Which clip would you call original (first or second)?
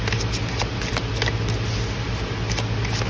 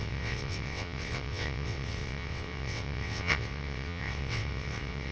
first